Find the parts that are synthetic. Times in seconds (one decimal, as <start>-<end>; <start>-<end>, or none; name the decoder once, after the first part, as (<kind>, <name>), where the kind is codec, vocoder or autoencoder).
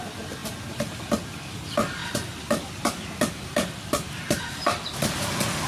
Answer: 2.0-5.7 (vocoder, BigVGAN v2)